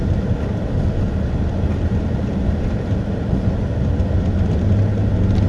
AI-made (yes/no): no